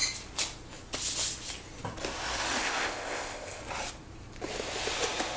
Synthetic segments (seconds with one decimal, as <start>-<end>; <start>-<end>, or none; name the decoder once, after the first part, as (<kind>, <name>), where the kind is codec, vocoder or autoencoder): 2.6-3.6 (codec, ZipCodec)

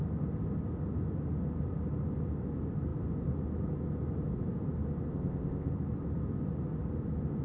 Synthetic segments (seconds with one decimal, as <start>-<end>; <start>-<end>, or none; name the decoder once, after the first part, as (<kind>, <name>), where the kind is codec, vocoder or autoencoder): 5.1-5.7 (codec, ZipCodec)

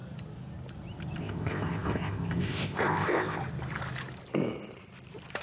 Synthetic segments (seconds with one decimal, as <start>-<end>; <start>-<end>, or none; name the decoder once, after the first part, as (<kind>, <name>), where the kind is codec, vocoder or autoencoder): 1.2-3.4 (codec, ZipCodec)

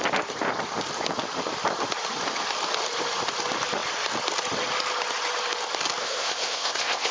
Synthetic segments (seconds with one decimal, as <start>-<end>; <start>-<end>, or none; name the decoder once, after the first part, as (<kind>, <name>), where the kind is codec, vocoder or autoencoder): 6.0-7.1 (codec, ZipCodec)